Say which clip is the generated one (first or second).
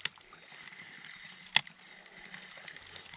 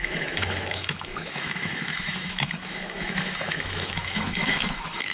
second